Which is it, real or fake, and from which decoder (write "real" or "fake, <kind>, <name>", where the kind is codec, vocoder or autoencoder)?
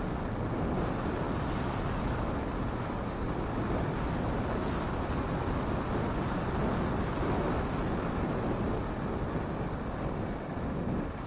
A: real